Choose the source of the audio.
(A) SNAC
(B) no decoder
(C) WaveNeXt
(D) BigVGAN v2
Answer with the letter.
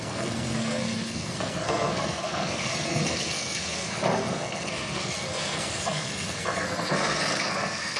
A